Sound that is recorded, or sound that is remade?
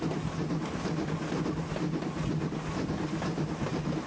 recorded